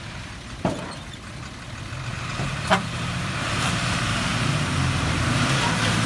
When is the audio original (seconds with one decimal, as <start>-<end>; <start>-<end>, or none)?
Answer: 0.0-2.1